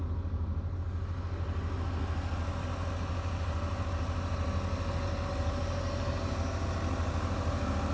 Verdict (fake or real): real